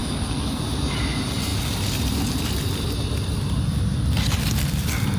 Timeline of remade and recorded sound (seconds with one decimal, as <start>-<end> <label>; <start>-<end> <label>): 0.0-0.6 remade; 0.6-5.2 recorded